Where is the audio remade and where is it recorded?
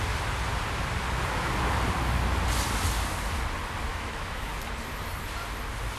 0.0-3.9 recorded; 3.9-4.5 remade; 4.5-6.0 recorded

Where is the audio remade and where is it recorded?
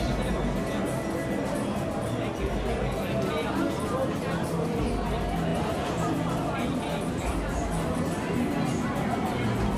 0.0-9.8 recorded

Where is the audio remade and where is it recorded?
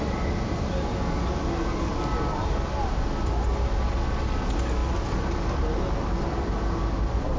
0.0-7.4 recorded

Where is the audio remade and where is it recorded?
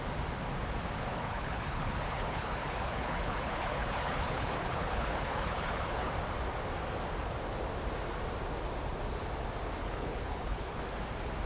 0.0-1.1 recorded; 1.1-6.1 remade; 6.1-9.8 recorded; 9.8-10.8 remade; 10.8-11.5 recorded